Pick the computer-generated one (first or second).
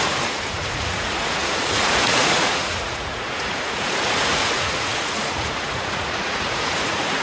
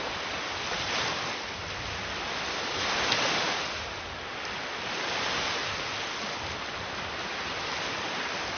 first